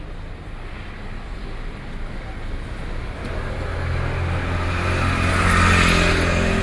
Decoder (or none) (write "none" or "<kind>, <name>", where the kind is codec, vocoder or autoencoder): none